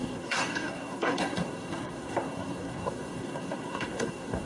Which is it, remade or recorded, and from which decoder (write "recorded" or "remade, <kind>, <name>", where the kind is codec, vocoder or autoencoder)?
remade, codec, SNAC